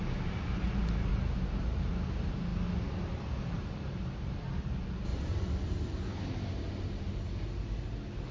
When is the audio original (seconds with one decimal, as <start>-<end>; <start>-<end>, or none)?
0.0-1.1; 1.9-5.1; 6.5-8.3